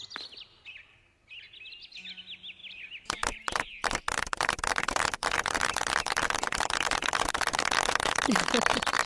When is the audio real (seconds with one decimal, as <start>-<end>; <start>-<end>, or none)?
0.0-2.6; 7.3-9.1